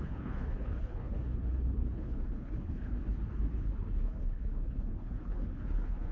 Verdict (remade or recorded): remade